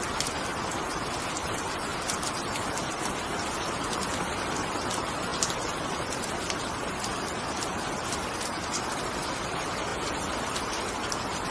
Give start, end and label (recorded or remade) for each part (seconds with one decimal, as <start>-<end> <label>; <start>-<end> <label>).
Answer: 0.0-0.5 remade; 0.5-1.3 recorded; 1.3-1.9 remade; 1.9-2.7 recorded; 2.7-11.5 remade